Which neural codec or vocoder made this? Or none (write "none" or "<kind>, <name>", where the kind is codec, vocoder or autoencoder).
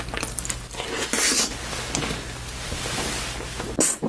none